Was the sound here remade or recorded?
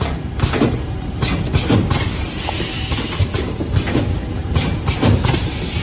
recorded